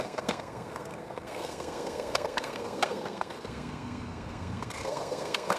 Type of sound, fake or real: fake